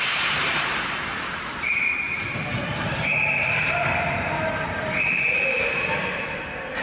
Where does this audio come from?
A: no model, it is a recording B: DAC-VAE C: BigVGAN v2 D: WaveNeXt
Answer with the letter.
C